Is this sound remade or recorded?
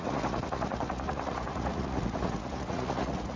remade